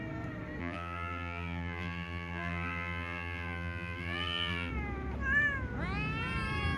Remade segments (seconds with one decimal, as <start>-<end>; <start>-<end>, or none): 0.6-4.7